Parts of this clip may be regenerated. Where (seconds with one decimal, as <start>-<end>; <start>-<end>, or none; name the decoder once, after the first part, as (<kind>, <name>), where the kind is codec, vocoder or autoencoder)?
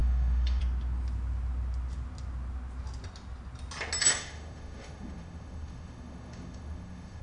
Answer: 0.0-0.6 (autoencoder, DAC-VAE); 4.0-7.2